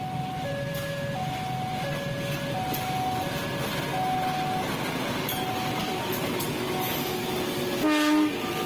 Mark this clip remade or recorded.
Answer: recorded